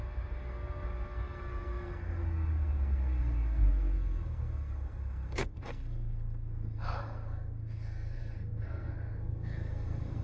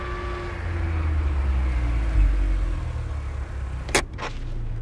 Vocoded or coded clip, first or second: first